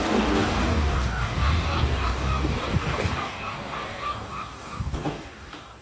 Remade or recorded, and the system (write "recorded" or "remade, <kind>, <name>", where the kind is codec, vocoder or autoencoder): remade, codec, DAC